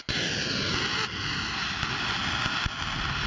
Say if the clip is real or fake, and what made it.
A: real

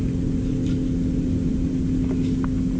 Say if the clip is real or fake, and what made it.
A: real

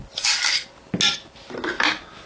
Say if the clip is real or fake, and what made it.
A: real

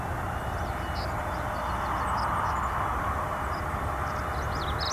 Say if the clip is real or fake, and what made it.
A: real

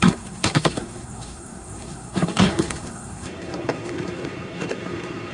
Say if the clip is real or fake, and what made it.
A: fake, codec, SNAC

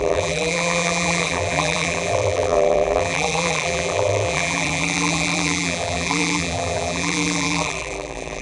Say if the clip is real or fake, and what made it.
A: fake, vocoder, BigVGAN v2